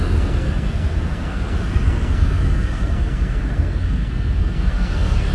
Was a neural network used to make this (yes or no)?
yes